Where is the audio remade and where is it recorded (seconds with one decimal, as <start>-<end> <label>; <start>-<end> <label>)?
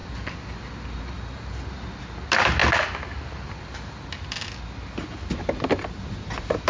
0.0-6.7 recorded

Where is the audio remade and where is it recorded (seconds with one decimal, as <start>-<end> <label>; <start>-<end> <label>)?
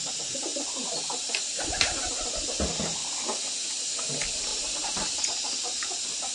0.0-0.5 recorded; 0.5-1.3 remade; 1.3-4.5 recorded; 4.5-5.2 remade; 5.2-6.3 recorded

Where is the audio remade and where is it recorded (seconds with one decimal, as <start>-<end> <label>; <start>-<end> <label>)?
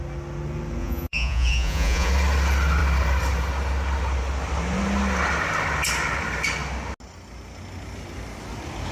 0.0-0.8 recorded; 0.8-2.1 remade; 2.1-8.9 recorded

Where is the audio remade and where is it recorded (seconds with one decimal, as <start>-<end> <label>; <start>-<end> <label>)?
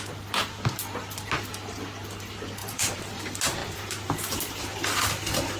0.0-2.6 recorded; 2.6-3.2 remade; 3.2-5.6 recorded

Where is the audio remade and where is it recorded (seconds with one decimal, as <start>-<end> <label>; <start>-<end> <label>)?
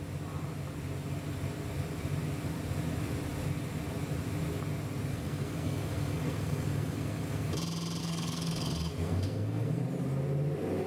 0.0-5.1 recorded; 5.1-7.5 remade; 7.5-8.0 recorded; 8.0-9.8 remade; 9.8-10.9 recorded